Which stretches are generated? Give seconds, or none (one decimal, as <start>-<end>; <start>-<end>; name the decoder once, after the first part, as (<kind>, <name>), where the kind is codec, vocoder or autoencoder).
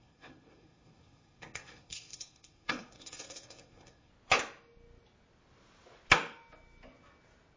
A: 0.0-4.1 (codec, SNAC)